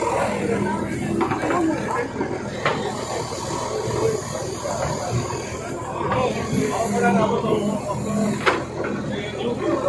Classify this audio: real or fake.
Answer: real